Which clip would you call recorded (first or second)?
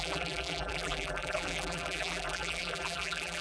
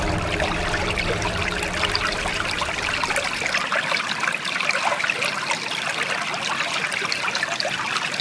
second